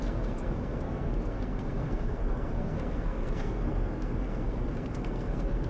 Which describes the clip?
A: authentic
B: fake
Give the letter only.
B